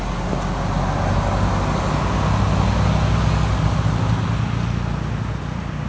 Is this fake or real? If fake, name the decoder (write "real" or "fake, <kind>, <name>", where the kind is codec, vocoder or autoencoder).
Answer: real